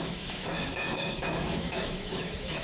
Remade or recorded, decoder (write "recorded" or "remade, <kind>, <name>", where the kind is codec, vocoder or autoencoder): remade, autoencoder, DAC-VAE